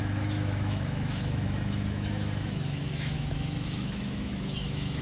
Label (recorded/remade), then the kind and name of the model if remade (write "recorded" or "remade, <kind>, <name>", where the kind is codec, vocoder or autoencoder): remade, autoencoder, DAC-VAE